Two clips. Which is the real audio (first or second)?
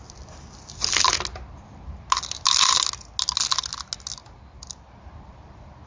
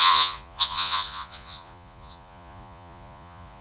first